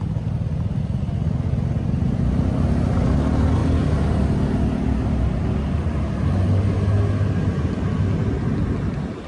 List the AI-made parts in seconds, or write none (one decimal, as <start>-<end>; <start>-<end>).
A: none